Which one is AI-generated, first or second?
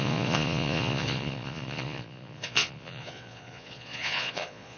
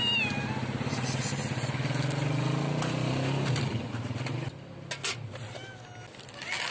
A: first